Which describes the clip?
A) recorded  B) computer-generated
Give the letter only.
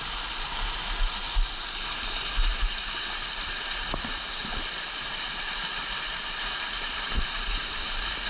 B